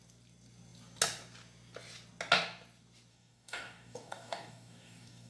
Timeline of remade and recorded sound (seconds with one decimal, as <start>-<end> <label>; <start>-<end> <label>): 0.0-3.1 recorded; 3.1-5.3 remade